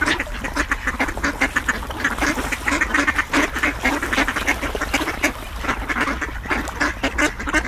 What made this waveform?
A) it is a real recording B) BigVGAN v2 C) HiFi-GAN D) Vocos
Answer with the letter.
A